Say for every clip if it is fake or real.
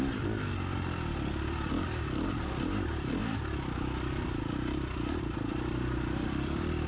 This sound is fake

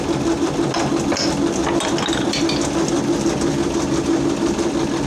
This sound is real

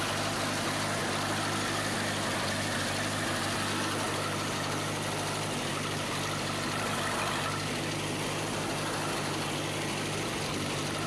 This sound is real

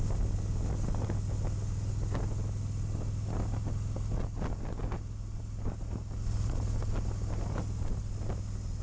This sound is real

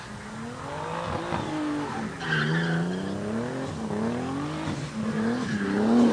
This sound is real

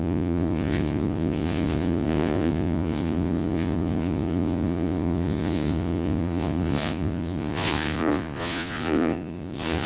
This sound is fake